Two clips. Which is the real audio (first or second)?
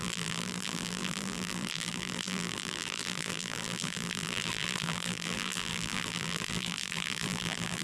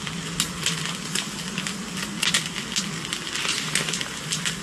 second